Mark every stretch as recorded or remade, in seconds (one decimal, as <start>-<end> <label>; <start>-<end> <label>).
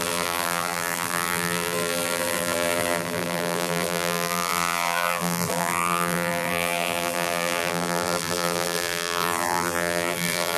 0.0-10.6 remade